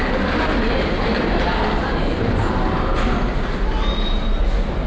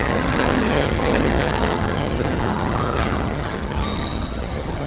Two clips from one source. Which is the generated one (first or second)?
second